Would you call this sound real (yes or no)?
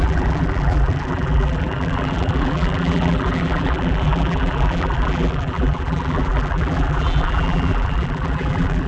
no